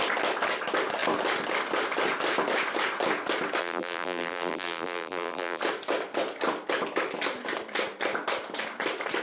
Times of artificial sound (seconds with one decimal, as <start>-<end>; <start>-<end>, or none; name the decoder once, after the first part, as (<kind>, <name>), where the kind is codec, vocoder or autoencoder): 3.6-5.6 (vocoder, BigVGAN v2)